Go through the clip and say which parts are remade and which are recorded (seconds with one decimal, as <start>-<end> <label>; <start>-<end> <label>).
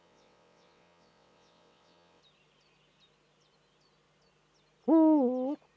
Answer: 0.0-2.2 remade; 2.2-5.8 recorded